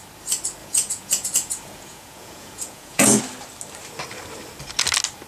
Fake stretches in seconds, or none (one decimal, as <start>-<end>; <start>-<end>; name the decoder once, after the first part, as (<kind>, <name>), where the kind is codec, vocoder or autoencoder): 0.6-3.2 (vocoder, Vocos)